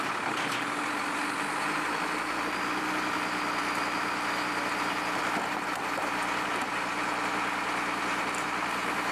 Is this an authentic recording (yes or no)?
yes